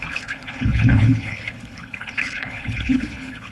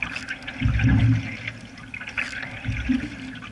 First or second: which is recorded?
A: second